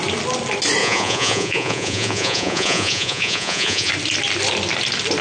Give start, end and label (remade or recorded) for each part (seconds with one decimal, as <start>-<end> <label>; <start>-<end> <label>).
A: 0.0-0.8 recorded; 0.8-3.9 remade; 3.9-5.2 recorded